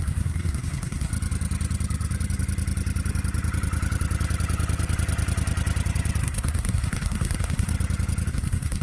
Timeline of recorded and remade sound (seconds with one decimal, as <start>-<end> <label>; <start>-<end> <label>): 0.0-1.1 remade; 1.1-6.2 recorded; 6.2-7.7 remade; 7.7-8.3 recorded; 8.3-8.8 remade